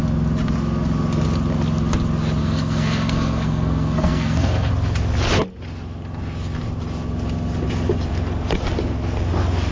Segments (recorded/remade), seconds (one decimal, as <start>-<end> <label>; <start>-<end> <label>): 0.0-2.4 recorded; 2.4-4.7 remade; 4.7-9.7 recorded